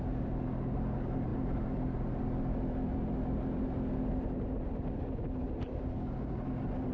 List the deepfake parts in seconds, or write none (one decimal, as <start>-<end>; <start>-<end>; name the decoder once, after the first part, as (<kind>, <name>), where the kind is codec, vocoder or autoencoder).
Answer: none